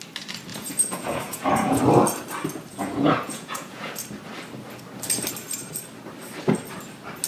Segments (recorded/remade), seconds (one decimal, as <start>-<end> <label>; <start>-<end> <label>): 0.0-0.5 recorded; 0.5-1.8 remade; 1.8-2.7 recorded; 2.7-3.9 remade; 3.9-7.3 recorded